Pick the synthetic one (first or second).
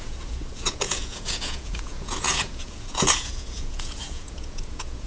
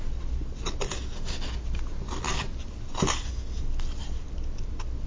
first